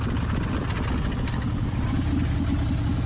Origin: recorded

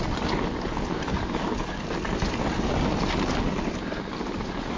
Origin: recorded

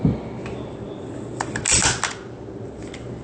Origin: recorded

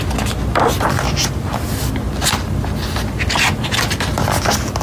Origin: recorded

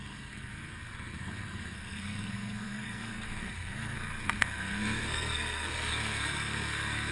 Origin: remade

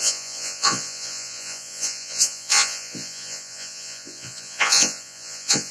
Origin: remade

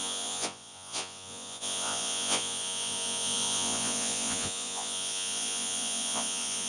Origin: remade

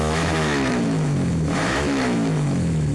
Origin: remade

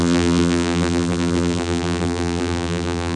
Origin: remade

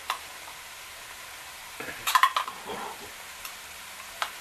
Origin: remade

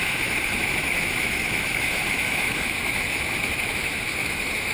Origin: remade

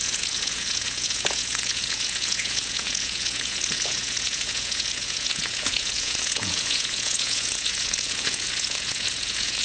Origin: remade